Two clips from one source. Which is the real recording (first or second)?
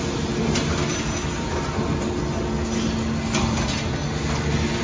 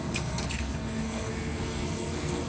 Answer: first